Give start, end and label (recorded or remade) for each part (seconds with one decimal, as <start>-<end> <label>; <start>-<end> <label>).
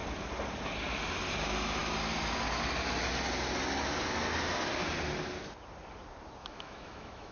0.0-6.4 recorded; 6.4-7.3 remade